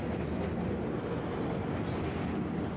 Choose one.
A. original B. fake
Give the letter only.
A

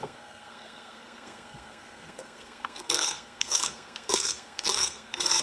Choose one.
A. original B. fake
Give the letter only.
B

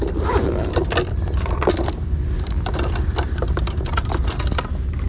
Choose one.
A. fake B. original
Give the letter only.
B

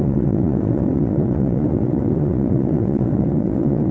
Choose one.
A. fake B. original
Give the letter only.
A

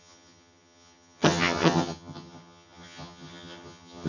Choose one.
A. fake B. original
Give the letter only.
A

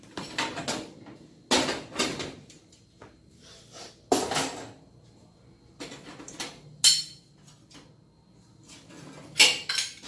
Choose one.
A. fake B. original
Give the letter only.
B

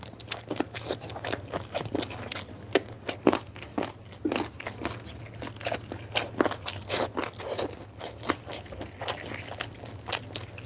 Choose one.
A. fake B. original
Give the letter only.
B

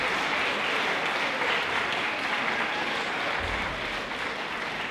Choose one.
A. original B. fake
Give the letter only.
A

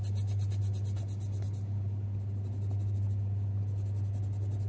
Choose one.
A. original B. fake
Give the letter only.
A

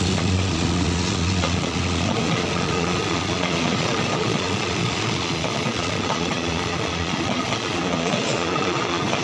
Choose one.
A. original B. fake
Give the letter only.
B